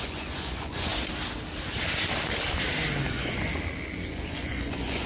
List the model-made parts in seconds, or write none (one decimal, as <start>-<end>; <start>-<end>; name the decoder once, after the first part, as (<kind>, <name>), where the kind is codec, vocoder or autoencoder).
0.0-0.9 (vocoder, Vocos); 3.1-3.5; 4.1-5.1